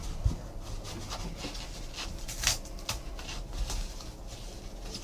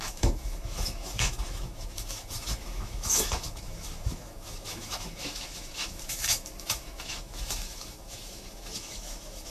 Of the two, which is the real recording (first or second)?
first